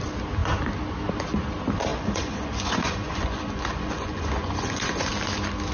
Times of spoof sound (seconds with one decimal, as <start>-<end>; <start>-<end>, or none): 1.9-5.1